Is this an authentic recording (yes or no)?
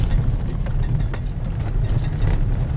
yes